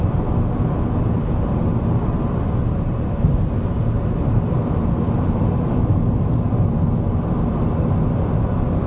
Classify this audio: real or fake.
real